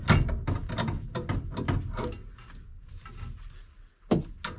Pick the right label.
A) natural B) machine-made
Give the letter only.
A